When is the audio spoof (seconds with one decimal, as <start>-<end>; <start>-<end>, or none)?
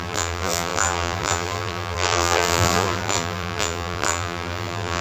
0.0-5.0